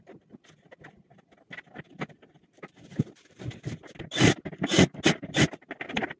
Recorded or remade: recorded